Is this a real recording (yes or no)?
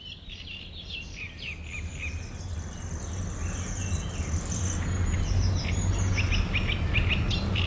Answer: yes